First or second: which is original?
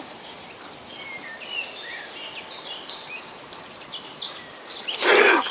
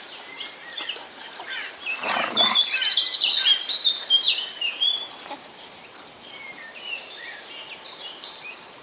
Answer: first